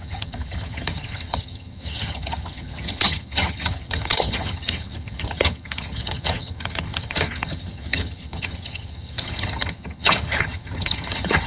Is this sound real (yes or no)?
no